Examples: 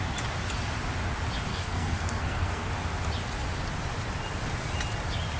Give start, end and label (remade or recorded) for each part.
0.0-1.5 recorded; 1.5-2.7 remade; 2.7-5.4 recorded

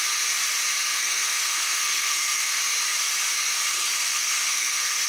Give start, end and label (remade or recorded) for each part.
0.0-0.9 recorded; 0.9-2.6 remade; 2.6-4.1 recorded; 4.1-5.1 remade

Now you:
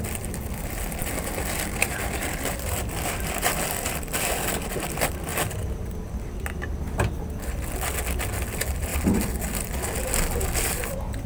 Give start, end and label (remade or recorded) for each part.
0.0-5.3 remade; 5.3-8.4 recorded; 8.4-8.9 remade; 8.9-11.3 recorded

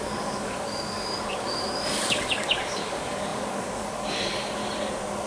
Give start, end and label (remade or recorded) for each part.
0.0-4.6 remade; 4.6-5.3 recorded

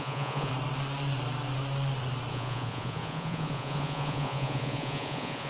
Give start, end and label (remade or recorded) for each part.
0.0-0.5 remade; 0.5-2.3 recorded; 2.3-5.5 remade

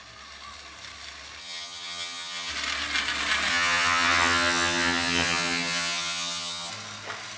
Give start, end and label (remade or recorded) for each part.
0.0-1.4 recorded; 1.4-2.5 remade; 2.5-3.5 recorded; 3.5-6.7 remade; 6.7-7.4 recorded